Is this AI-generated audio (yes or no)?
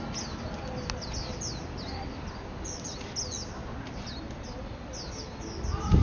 no